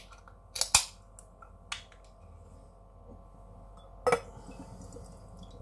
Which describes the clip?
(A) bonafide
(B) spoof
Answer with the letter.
A